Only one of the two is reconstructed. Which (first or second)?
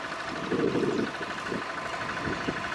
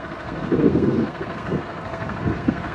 second